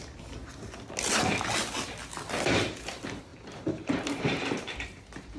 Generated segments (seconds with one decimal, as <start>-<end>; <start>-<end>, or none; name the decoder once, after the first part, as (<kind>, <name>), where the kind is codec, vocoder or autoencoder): 3.3-5.0 (vocoder, BigVGAN v2)